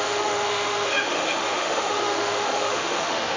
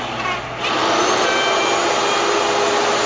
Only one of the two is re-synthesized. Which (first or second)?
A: first